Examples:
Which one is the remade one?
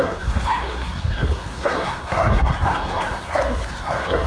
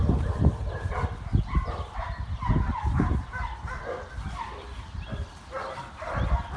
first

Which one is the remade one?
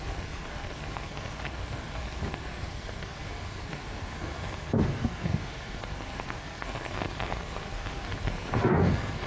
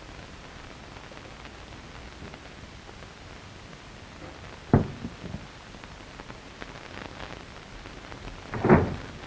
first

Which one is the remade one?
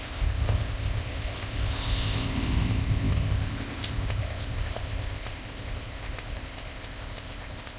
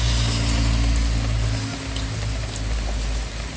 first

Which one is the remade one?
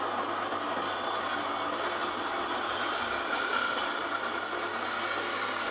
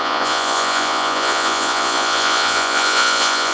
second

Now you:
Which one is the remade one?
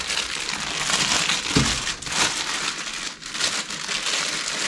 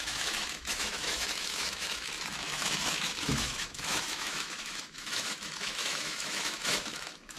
second